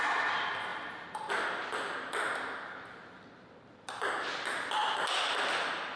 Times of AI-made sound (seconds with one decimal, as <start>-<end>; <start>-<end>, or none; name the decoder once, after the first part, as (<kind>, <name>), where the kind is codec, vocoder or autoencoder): none